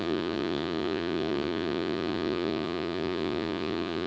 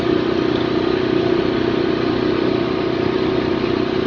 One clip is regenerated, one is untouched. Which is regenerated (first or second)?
first